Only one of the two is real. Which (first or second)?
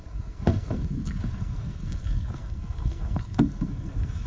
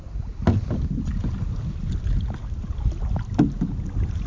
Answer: second